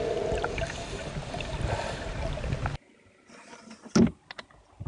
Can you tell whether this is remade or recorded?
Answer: recorded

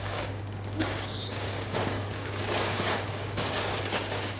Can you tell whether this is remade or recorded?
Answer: remade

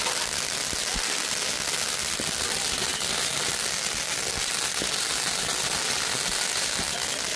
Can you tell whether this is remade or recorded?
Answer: recorded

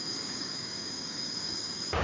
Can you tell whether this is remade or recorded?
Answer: remade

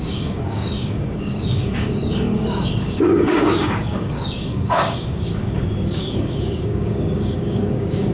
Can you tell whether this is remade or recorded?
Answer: remade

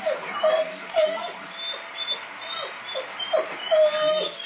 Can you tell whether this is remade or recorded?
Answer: recorded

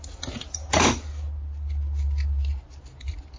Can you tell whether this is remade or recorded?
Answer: recorded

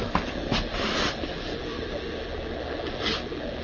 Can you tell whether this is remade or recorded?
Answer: recorded